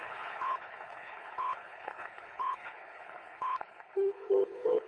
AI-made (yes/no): yes